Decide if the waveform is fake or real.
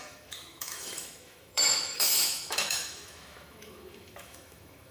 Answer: fake